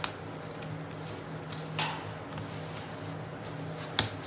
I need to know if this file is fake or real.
real